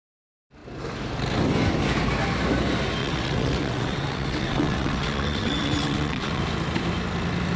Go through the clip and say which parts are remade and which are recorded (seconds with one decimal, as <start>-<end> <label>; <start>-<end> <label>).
0.0-3.0 recorded; 3.0-6.4 remade; 6.4-7.6 recorded

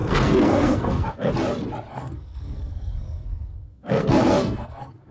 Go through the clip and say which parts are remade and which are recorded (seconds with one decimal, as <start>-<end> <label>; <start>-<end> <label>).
0.0-1.3 remade; 1.3-1.9 recorded; 1.9-5.1 remade

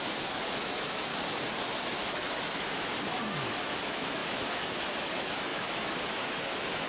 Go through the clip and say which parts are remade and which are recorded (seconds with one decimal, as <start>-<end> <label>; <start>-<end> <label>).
0.0-1.1 remade; 1.1-2.1 recorded; 2.1-2.9 remade; 2.9-3.6 recorded; 3.6-6.9 remade

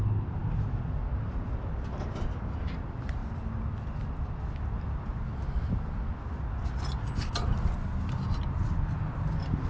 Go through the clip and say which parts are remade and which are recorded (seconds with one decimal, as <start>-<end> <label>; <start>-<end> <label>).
0.0-9.7 recorded

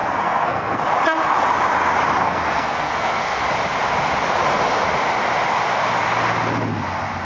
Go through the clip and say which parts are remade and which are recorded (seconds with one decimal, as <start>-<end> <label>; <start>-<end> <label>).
0.0-0.8 remade; 0.8-2.2 recorded; 2.2-3.4 remade; 3.4-7.2 recorded

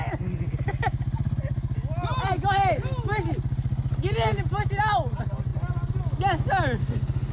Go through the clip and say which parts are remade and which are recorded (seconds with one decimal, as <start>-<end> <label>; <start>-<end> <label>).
0.0-6.8 recorded; 6.8-7.3 remade

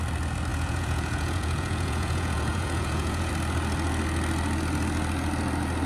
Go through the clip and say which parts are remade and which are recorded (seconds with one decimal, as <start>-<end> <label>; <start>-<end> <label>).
0.0-0.5 recorded; 0.5-3.3 remade; 3.3-5.9 recorded